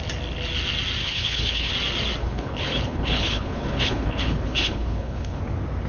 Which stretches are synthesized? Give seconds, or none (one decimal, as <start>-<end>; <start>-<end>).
1.0-1.7; 2.2-5.4